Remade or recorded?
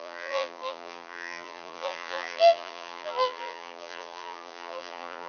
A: remade